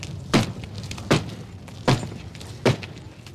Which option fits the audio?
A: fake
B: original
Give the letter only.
B